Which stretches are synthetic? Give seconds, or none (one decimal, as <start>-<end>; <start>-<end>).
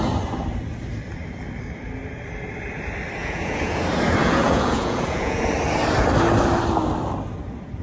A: 3.2-3.8; 4.2-5.4